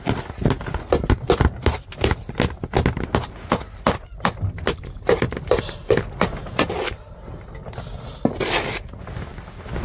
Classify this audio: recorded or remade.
recorded